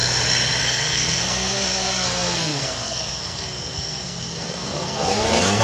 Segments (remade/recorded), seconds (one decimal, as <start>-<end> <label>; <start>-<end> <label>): 0.0-0.6 recorded; 0.6-5.6 remade